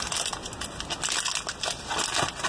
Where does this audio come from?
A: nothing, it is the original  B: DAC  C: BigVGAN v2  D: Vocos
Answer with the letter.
A